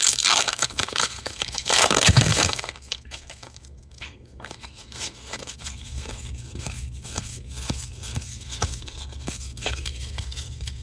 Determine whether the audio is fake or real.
fake